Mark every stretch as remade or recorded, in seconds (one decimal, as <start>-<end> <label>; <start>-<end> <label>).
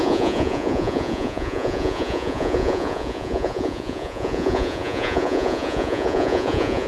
0.0-6.9 remade